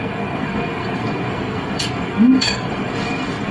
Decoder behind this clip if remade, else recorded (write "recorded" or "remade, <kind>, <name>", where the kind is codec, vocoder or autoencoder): remade, codec, SNAC